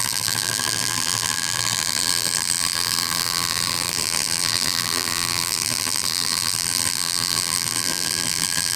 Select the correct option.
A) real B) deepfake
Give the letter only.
B